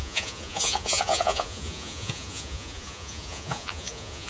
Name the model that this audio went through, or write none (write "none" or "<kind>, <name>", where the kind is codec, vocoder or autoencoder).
vocoder, Vocos